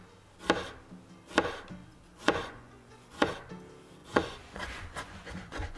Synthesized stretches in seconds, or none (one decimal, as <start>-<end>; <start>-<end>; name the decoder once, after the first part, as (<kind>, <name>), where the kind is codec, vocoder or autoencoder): 2.1-3.3 (vocoder, Vocos); 4.0-5.8